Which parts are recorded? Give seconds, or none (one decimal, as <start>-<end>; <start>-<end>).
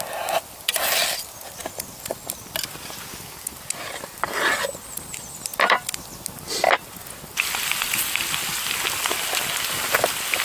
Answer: 0.0-1.6; 2.1-5.5; 7.6-10.4